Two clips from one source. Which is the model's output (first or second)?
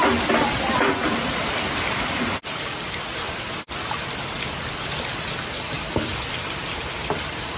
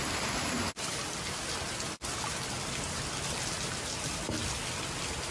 first